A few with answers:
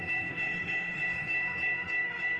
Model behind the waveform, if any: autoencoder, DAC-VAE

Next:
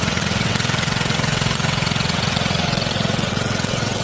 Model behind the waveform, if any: vocoder, WaveNeXt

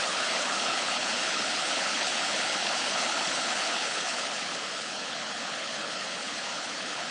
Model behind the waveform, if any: codec, HILCodec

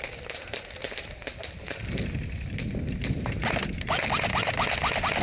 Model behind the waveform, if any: none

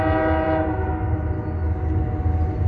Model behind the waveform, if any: none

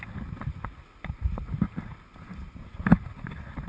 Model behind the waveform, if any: none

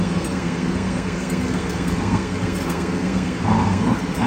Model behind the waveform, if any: codec, SNAC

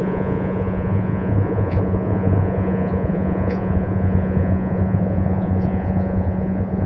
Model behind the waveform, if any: vocoder, Vocos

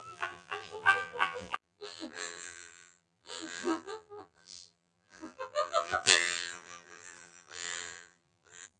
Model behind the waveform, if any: vocoder, BigVGAN v2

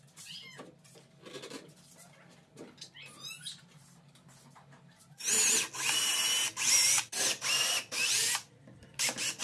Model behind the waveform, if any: none